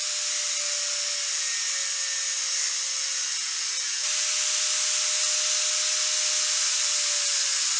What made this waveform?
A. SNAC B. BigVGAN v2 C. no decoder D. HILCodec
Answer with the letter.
C